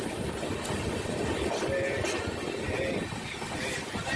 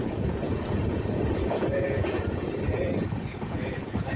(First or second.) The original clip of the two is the first